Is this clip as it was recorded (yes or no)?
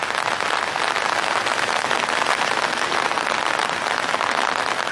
yes